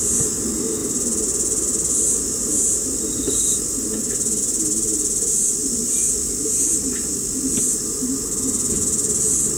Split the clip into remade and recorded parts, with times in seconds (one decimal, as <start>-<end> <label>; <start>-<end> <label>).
0.0-9.6 recorded